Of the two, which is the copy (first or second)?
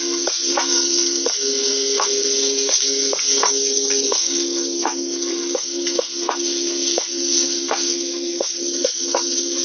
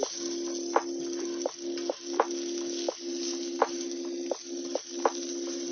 first